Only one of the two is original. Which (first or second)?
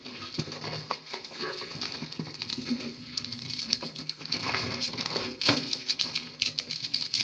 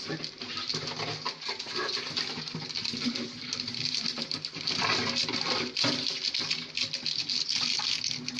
second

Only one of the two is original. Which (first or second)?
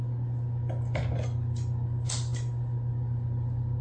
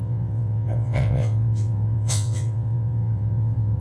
first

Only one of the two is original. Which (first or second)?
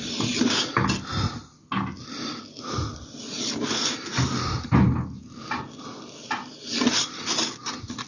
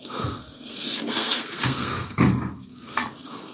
first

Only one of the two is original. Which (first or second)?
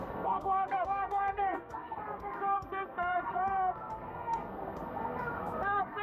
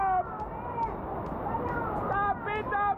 second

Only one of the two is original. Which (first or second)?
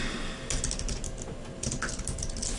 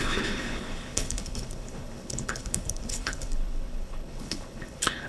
first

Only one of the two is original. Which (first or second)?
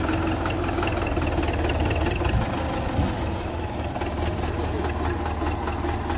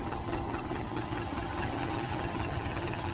first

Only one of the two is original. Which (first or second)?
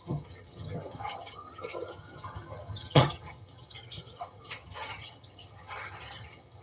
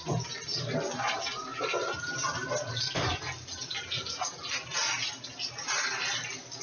second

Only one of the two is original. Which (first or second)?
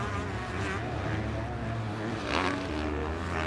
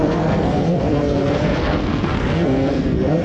first